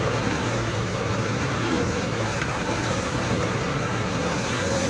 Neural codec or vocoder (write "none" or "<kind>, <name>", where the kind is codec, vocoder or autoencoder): codec, SNAC